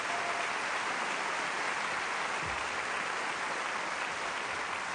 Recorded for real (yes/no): yes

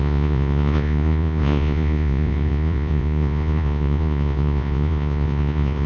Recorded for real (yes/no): no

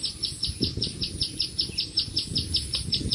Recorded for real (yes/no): yes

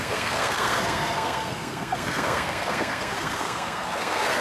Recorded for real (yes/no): no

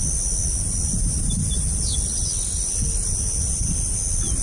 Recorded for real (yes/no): yes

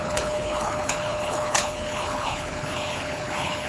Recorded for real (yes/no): no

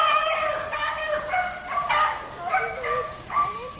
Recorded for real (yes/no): no